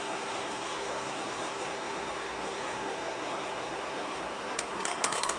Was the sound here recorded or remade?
remade